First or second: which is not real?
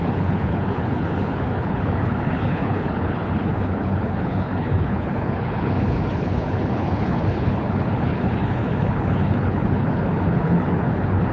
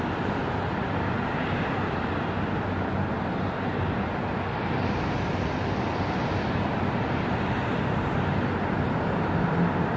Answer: first